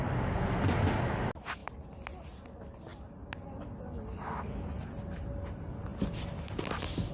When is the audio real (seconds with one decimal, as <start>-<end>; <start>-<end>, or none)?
0.0-7.1